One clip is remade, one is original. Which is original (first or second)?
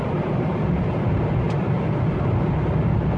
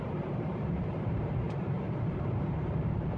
first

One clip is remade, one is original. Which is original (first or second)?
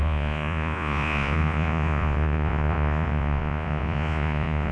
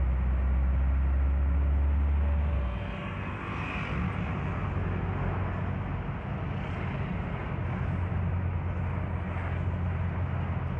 second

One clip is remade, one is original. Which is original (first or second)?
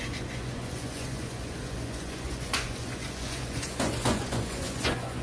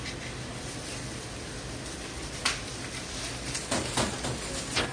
second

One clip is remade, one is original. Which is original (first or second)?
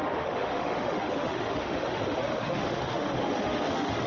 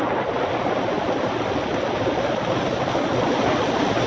second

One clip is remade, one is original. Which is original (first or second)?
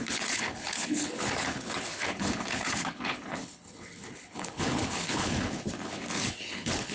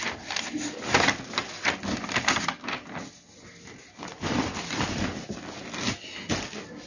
second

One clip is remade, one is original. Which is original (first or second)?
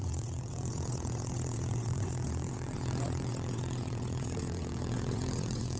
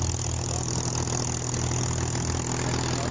second